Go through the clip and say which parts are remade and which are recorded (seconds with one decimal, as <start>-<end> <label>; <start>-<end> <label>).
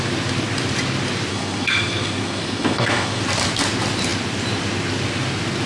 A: 0.0-1.3 recorded; 1.3-3.2 remade; 3.2-5.7 recorded